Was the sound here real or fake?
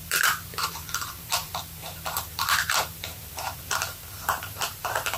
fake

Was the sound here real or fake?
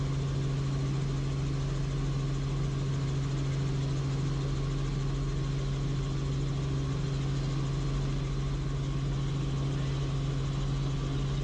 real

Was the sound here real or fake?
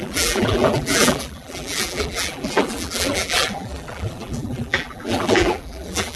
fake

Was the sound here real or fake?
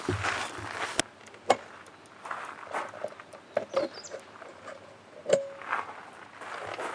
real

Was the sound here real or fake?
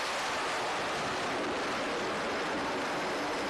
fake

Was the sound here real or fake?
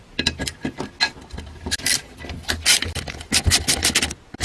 real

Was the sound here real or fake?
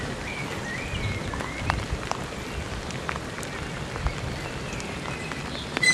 fake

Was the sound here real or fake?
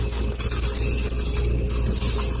real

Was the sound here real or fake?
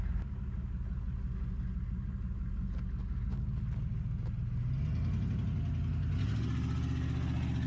real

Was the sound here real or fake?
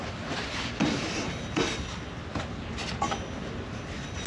real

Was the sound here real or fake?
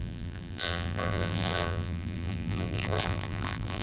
fake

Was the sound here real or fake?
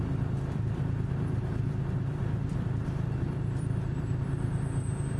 fake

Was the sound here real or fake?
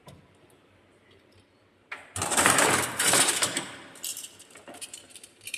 fake